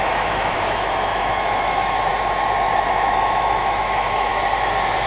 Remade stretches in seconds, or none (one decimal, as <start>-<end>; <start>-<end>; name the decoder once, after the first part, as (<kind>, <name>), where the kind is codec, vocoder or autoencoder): 0.0-2.1 (autoencoder, DAC-VAE); 2.9-4.3